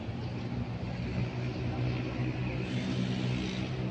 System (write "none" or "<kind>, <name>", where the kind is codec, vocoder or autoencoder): none